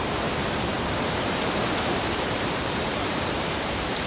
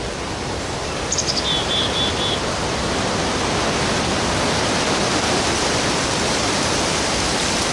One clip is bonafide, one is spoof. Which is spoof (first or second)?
first